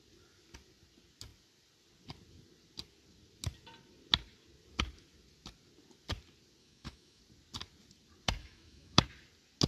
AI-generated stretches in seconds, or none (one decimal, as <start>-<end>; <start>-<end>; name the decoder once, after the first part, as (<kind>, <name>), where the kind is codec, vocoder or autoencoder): 6.6-7.2 (autoencoder, DAC-VAE); 8.4-9.0